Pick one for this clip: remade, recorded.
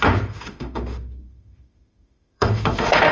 remade